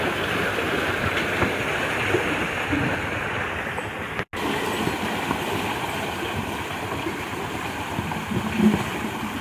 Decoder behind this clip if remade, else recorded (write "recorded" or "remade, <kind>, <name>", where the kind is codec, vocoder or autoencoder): recorded